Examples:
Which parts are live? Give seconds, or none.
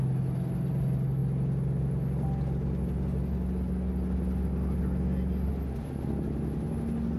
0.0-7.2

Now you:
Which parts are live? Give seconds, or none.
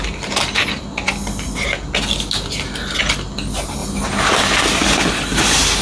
0.0-5.8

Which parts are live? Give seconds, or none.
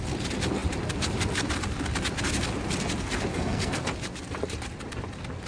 0.0-3.3; 3.9-5.5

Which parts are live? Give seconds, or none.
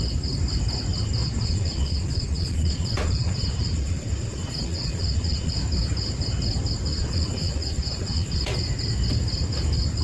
0.0-1.2; 5.5-6.9; 8.5-10.0